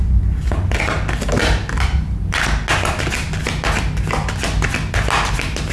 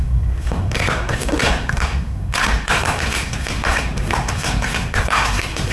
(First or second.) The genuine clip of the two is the first